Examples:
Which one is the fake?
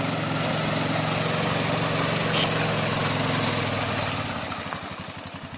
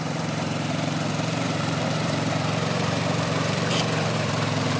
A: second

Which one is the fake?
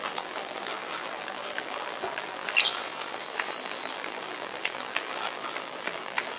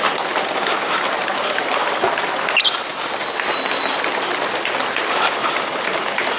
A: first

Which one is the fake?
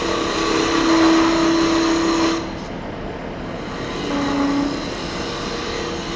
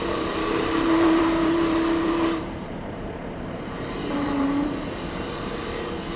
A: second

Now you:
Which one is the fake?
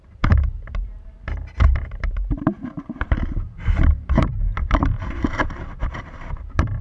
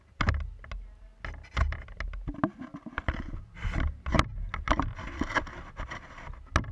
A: first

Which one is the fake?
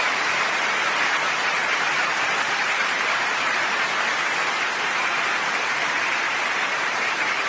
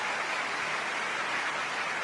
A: first